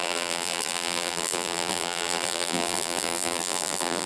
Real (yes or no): no